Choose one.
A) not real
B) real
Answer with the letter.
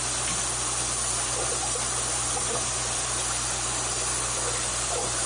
B